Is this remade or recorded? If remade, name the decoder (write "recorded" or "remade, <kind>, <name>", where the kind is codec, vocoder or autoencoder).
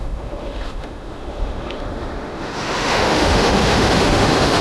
remade, autoencoder, DAC-VAE